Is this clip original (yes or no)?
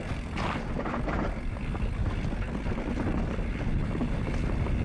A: yes